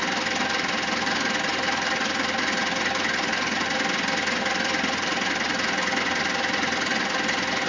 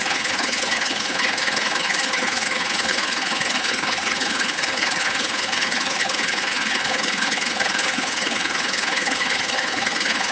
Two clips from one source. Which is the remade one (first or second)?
second